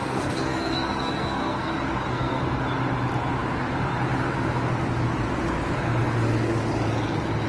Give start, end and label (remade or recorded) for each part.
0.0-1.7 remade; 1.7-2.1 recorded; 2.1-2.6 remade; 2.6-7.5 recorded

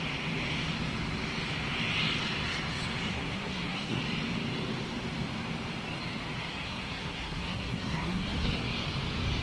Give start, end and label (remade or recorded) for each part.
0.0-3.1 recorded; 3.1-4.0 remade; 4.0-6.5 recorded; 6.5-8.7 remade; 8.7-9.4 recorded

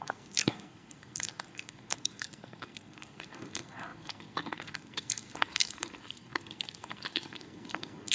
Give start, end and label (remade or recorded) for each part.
0.0-8.1 remade